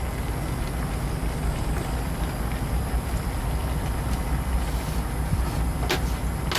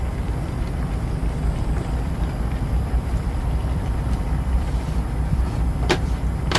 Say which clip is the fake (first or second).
second